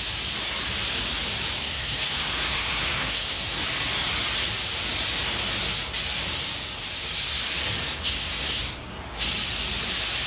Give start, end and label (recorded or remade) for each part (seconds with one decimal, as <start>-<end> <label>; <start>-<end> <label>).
0.0-1.6 recorded; 1.6-3.6 remade; 3.6-7.8 recorded; 7.8-9.0 remade; 9.0-10.3 recorded